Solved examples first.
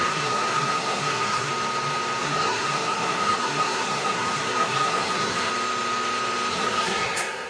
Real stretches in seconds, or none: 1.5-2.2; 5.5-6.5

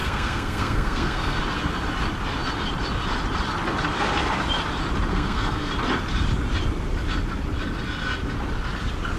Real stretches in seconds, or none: 1.4-5.1; 5.7-9.2

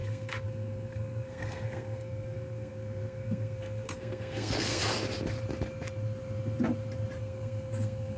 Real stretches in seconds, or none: 4.8-7.2

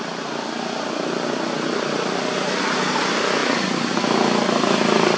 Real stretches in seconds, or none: 0.0-5.2

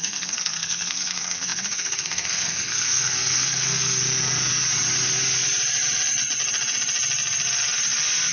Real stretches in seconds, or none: 4.0-8.3

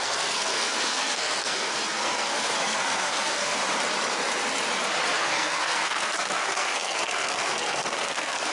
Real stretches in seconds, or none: 3.6-5.2

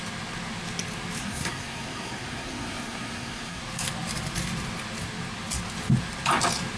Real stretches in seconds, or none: 0.0-1.2; 3.6-6.8

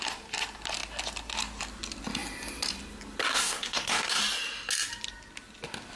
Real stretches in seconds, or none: 0.0-3.3; 4.2-6.0